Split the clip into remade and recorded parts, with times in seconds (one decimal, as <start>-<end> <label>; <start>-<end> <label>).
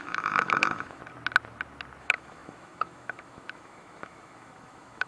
0.0-1.0 remade; 1.0-2.0 recorded; 2.0-5.1 remade